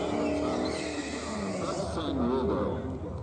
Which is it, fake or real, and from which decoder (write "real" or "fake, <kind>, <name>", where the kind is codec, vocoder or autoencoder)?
real